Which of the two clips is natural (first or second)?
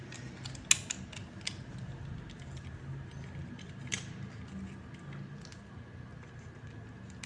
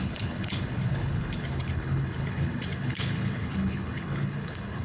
first